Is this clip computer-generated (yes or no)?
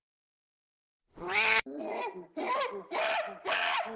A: yes